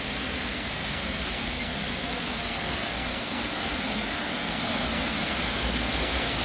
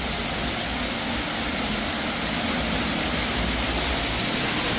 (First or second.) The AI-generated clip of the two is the first